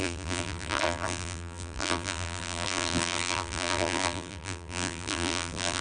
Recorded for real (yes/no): no